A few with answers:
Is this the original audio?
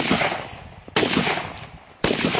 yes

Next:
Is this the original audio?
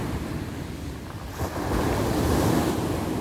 yes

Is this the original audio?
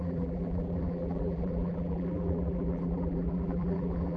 no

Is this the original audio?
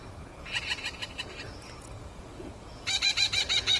no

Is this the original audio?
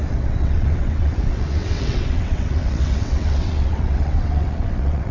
no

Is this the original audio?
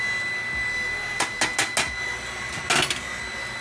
yes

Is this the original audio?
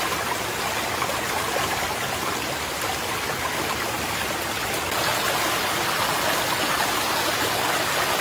yes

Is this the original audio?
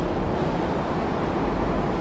yes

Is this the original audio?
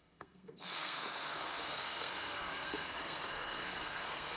no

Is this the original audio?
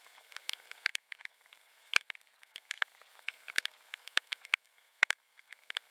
no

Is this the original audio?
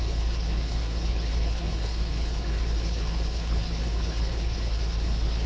no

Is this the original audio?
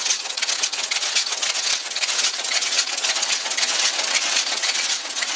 no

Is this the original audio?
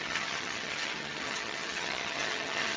no